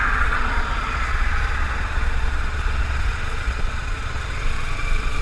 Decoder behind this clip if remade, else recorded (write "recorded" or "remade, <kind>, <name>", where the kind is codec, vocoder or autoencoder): remade, vocoder, Vocos